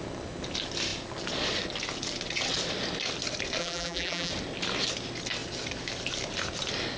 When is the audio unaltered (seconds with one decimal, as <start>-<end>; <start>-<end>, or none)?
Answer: 0.0-3.6; 4.3-7.0